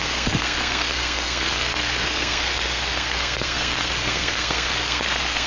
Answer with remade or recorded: remade